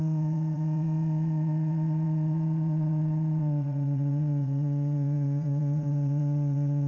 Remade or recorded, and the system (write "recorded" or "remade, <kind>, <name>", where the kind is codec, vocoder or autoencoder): remade, vocoder, Vocos